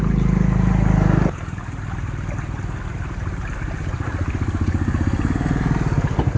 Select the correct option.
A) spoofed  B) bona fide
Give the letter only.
B